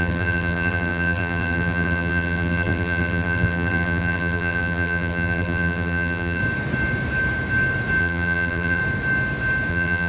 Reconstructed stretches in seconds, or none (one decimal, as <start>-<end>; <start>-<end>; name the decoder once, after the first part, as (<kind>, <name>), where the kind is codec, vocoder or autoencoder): 0.0-6.4 (vocoder, BigVGAN v2); 8.0-8.8; 9.7-10.1